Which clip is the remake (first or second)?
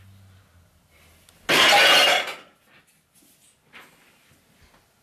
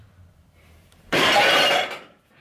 second